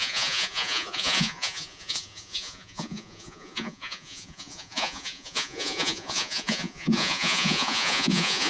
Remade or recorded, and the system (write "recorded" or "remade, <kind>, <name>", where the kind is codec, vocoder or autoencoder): remade, vocoder, Vocos